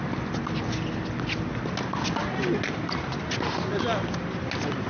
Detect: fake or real real